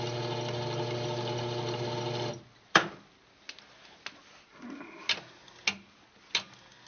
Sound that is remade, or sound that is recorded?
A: recorded